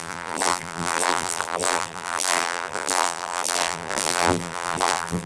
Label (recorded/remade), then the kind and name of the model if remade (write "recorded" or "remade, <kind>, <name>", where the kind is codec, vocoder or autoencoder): remade, vocoder, BigVGAN v2